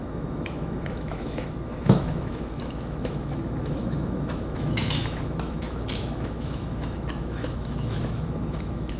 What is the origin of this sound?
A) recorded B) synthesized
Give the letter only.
B